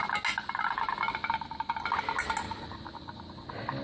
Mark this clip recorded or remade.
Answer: recorded